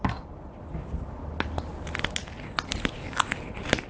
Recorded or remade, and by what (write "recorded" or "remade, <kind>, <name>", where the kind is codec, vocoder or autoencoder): recorded